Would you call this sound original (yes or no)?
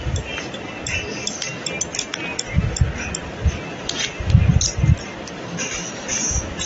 yes